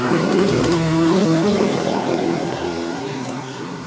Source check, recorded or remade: remade